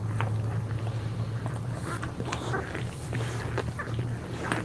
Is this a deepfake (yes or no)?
no